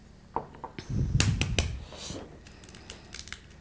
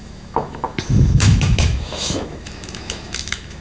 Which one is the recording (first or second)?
first